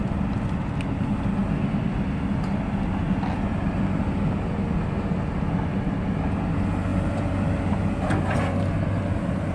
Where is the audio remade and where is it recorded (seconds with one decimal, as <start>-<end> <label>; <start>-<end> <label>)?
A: 0.0-6.9 recorded; 6.9-7.7 remade; 7.7-9.5 recorded